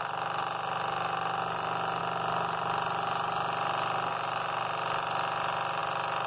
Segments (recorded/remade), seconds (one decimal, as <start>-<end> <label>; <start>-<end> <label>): 0.0-6.3 recorded

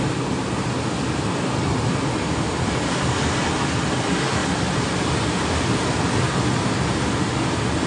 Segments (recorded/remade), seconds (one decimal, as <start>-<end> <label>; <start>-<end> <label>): 0.0-7.9 recorded

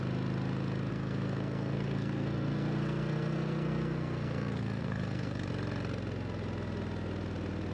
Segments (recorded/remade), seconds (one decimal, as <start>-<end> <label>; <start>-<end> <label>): 0.0-0.9 recorded; 0.9-5.5 remade; 5.5-7.7 recorded

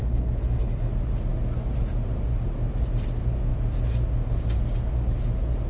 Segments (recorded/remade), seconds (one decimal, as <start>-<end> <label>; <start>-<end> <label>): 0.0-0.9 remade; 0.9-5.7 recorded

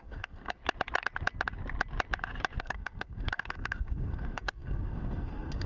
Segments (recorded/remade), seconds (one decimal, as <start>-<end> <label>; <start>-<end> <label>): 0.0-0.6 remade; 0.6-2.6 recorded; 2.6-5.7 remade